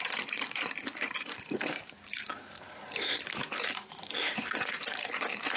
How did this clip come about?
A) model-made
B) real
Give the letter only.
A